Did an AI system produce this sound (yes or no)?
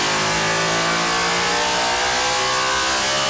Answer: no